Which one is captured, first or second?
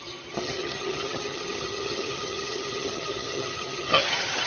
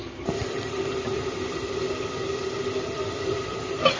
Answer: second